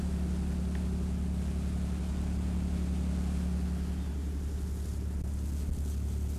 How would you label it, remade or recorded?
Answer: recorded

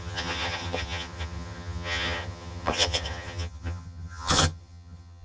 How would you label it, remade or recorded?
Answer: remade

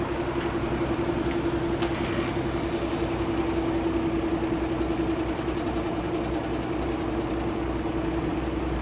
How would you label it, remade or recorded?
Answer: recorded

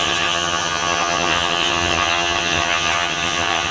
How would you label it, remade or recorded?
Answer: remade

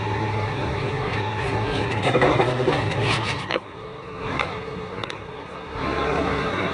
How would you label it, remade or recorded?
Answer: remade